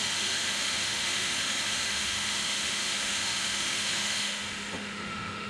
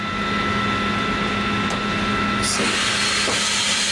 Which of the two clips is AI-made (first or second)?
first